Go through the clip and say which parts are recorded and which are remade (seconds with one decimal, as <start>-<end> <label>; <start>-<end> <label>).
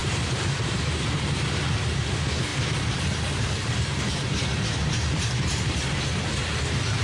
0.0-7.0 remade